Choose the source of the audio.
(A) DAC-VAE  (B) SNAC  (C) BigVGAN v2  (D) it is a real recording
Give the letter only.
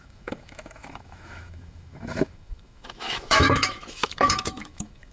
A